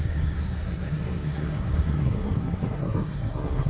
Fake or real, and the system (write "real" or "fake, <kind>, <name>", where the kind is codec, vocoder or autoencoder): fake, codec, SNAC